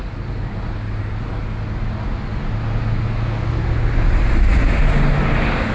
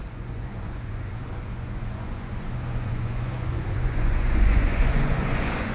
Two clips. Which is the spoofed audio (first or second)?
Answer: second